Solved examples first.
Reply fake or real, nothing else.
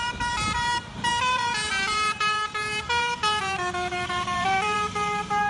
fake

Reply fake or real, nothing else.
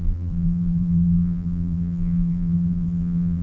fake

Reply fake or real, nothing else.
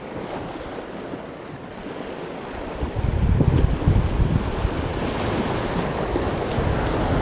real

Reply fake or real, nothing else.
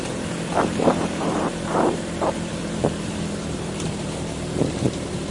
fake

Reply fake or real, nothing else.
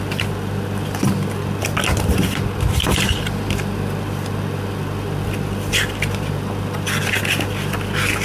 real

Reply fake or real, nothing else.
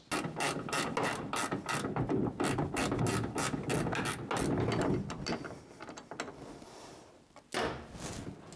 real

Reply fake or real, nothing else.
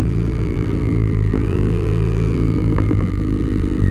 fake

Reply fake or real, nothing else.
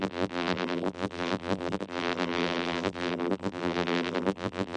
fake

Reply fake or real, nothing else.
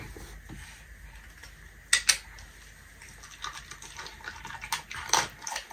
real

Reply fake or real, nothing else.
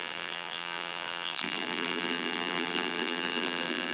fake